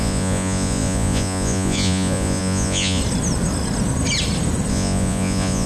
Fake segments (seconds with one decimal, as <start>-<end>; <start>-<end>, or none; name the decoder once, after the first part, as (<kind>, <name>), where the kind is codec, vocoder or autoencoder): 0.0-3.0 (vocoder, Vocos); 4.7-5.7